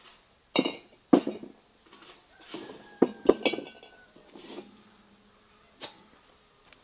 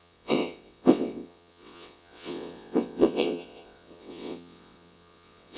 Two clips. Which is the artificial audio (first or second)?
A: second